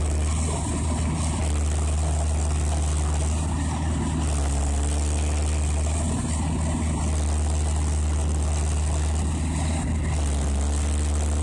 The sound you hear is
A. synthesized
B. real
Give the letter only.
B